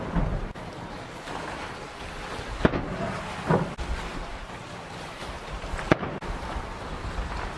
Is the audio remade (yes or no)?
no